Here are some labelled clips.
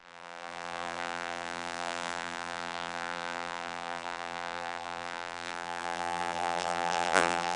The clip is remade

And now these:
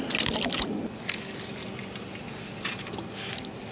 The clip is recorded